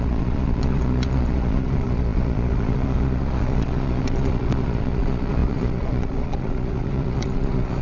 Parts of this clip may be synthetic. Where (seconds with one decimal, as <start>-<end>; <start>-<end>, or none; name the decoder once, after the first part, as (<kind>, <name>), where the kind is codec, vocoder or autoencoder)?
0.0-7.8 (vocoder, Vocos)